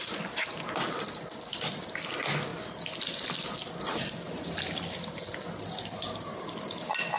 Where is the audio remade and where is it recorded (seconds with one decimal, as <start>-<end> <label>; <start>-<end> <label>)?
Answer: 0.0-7.2 recorded